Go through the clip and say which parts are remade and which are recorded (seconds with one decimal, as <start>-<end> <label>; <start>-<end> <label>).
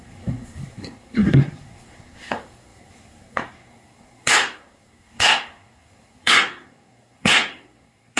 0.0-8.2 remade